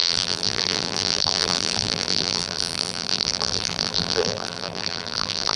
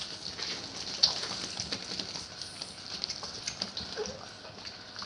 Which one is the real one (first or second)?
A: second